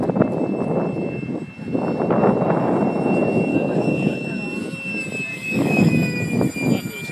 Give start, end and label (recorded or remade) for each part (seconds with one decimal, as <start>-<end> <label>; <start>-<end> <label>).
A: 0.0-3.5 recorded; 3.5-4.6 remade; 4.6-5.3 recorded; 5.3-5.9 remade; 5.9-7.1 recorded